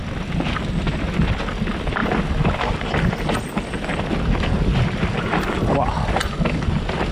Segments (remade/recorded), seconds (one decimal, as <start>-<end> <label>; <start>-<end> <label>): 0.0-7.1 recorded